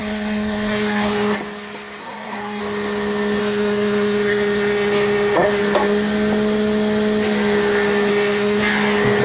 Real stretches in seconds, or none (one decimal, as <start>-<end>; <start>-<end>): 1.4-2.0; 2.6-3.4; 5.6-8.1; 8.6-9.2